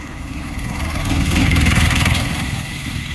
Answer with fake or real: fake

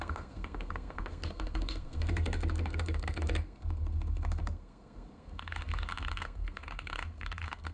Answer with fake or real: fake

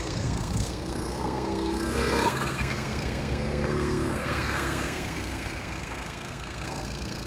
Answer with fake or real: fake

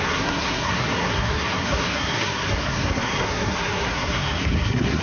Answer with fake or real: fake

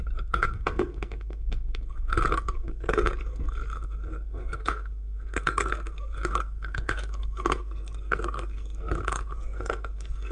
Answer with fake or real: fake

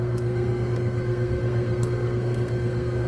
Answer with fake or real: fake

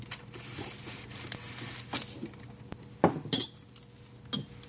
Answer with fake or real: real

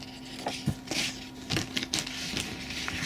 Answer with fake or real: real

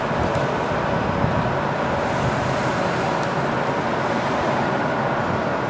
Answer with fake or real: real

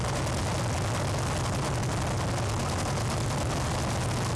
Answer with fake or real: real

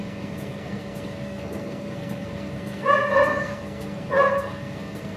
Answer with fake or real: fake